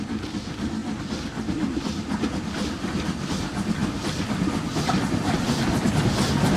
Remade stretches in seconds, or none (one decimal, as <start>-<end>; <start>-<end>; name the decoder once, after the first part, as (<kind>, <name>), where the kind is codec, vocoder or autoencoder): none